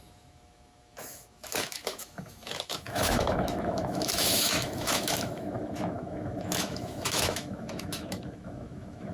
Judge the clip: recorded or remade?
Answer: remade